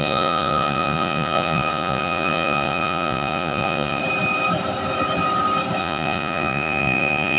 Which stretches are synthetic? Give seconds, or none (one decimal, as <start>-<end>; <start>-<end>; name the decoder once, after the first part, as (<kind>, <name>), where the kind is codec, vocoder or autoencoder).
0.0-4.0 (vocoder, Vocos); 5.8-7.4